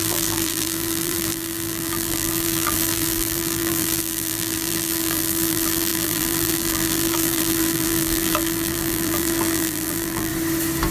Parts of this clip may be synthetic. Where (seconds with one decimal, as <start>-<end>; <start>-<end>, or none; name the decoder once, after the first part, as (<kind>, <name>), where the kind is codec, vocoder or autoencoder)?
0.0-10.3 (vocoder, BigVGAN v2)